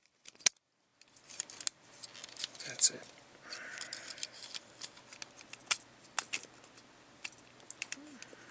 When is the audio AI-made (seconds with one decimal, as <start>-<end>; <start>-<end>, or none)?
none